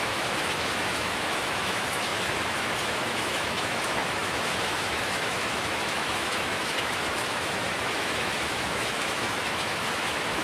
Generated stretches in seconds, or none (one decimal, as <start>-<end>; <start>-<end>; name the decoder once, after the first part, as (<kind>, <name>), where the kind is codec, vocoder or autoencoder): 0.0-10.4 (autoencoder, DAC-VAE)